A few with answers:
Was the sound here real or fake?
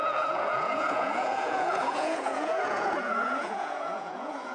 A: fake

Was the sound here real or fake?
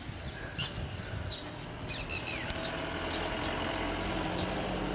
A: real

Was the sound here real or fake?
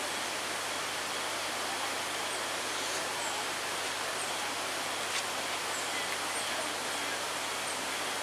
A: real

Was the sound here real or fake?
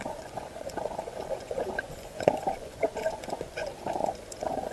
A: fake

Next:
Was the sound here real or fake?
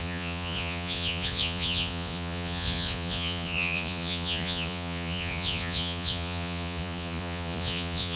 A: fake